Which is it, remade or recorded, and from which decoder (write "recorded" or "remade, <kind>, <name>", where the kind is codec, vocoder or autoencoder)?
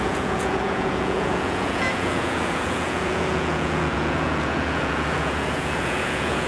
remade, vocoder, Vocos